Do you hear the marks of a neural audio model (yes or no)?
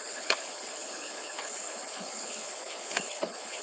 yes